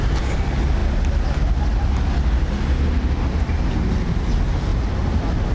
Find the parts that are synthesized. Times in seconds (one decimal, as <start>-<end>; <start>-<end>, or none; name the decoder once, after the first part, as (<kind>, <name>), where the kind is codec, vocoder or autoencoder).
4.7-5.5 (vocoder, BigVGAN v2)